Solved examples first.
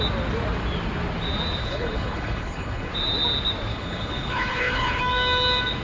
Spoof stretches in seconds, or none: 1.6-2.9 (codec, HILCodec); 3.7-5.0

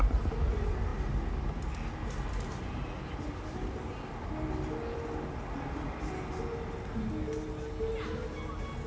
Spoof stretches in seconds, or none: none

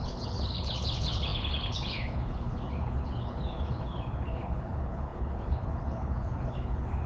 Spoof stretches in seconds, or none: 0.0-7.1 (codec, HILCodec)

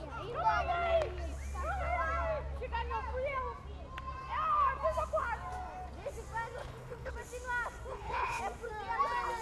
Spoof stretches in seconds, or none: 6.6-7.1 (codec, HILCodec); 7.9-8.4